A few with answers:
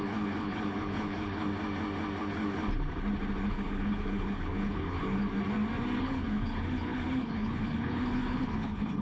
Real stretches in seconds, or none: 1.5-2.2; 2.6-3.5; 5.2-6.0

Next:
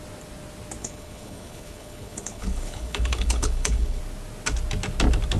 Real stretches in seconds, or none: 0.0-0.8; 4.0-5.4

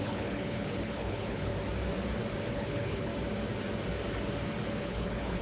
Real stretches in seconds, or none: 1.5-2.5; 3.1-4.8

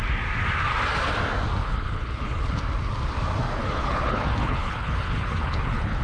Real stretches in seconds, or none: 0.0-1.6; 2.6-3.6

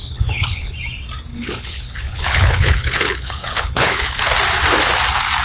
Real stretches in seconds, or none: 0.7-1.3; 4.2-5.4

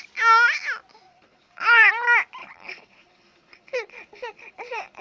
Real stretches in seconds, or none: 0.0-1.1; 1.9-2.4